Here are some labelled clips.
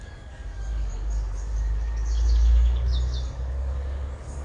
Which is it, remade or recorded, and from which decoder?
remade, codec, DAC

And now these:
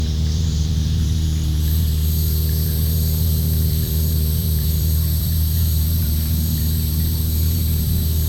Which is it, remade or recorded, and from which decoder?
remade, vocoder, BigVGAN v2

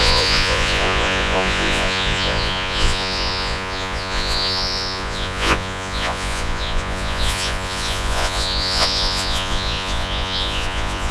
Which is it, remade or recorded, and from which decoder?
remade, vocoder, Vocos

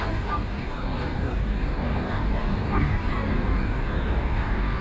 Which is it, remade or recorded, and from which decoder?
remade, codec, DAC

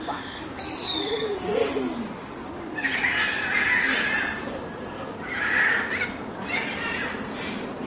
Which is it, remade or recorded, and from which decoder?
recorded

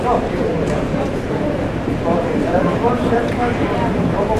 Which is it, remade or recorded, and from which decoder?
remade, vocoder, BigVGAN v2